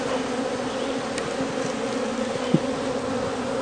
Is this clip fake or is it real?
real